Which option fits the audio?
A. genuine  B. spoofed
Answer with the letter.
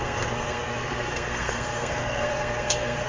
B